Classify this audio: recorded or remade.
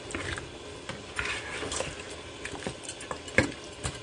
recorded